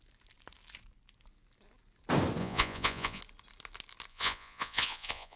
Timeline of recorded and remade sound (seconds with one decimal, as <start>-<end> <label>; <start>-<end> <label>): 0.0-2.4 recorded; 2.4-3.2 remade; 3.2-4.1 recorded; 4.1-5.4 remade